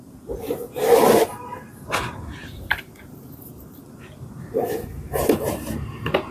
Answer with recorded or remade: remade